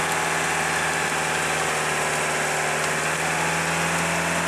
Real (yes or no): yes